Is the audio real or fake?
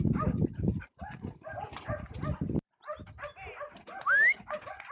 real